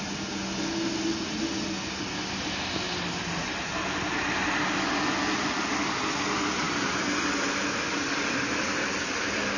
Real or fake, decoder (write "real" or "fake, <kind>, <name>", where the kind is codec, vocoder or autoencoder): real